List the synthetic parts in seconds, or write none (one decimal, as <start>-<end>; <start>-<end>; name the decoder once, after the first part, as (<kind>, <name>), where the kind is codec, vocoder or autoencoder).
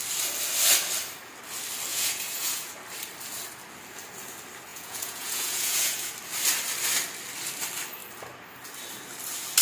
1.9-2.7 (vocoder, Vocos); 4.7-6.1